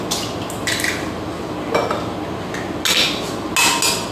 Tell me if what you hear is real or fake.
real